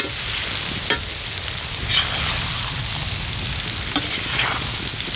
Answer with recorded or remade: recorded